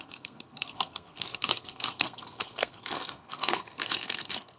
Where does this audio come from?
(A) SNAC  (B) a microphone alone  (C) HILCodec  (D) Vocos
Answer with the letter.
A